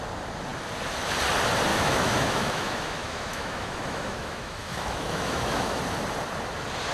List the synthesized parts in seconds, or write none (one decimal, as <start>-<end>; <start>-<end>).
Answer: 1.7-5.8